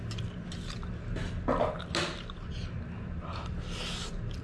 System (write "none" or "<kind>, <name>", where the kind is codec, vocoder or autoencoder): none